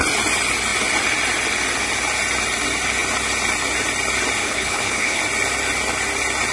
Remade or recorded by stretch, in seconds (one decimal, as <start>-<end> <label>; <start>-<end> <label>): 0.0-4.4 recorded; 4.4-5.2 remade; 5.2-6.5 recorded